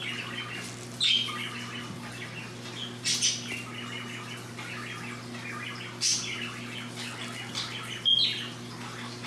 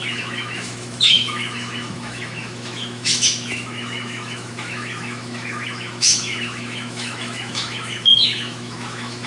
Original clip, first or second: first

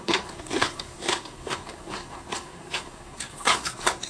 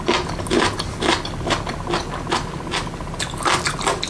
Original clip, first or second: second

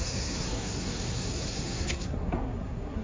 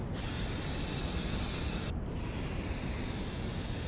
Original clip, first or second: second